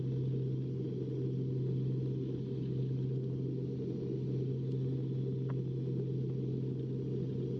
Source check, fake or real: real